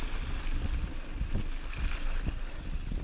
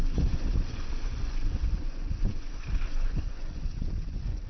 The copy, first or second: second